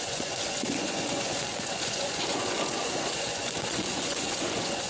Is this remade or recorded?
remade